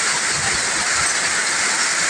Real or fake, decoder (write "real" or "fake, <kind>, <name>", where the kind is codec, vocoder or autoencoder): real